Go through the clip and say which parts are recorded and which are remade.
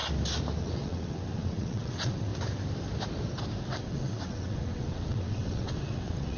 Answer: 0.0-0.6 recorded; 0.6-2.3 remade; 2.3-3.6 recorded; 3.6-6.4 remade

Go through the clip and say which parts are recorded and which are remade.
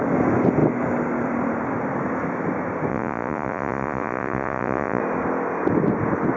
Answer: 0.0-2.9 recorded; 2.9-5.0 remade; 5.0-6.4 recorded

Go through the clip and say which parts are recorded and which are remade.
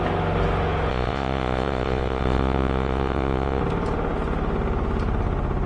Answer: 0.0-0.9 recorded; 0.9-3.6 remade; 3.6-5.7 recorded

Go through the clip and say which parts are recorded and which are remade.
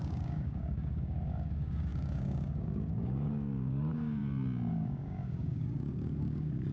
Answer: 0.0-4.2 remade; 4.2-4.7 recorded; 4.7-6.7 remade